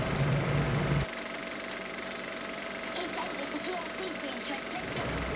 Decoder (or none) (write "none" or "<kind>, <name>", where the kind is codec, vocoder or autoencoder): vocoder, BigVGAN v2